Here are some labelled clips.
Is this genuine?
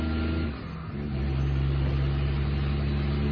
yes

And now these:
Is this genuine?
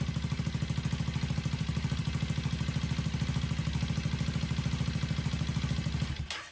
yes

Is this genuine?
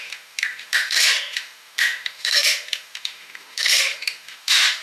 no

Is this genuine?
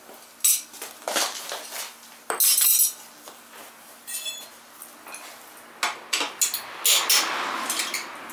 yes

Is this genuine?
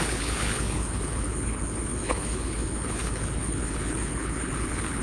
no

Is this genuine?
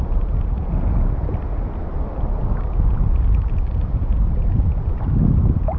yes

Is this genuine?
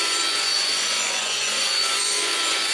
no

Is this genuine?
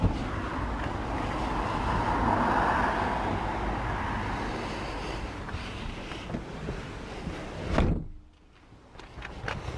yes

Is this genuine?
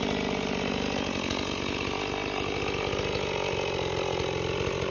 yes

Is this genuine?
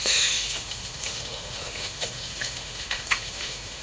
no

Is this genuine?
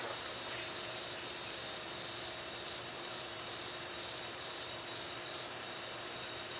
no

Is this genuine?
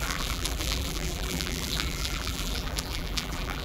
no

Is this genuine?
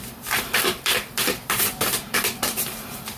no